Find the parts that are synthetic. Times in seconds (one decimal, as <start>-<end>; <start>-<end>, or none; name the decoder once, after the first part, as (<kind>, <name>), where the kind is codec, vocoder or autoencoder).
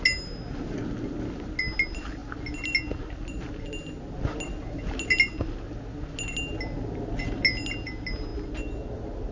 none